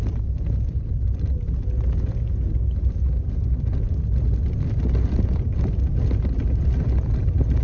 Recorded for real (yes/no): yes